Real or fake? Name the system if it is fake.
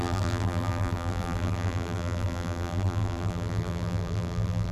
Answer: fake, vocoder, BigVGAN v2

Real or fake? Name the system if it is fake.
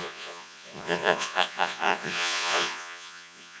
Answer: fake, vocoder, Vocos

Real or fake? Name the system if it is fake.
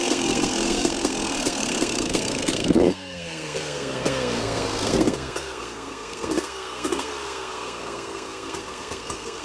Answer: fake, codec, SNAC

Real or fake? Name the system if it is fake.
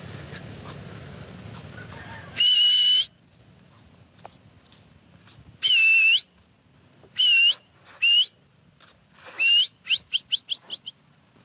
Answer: real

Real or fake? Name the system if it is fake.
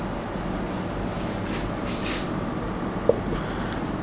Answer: real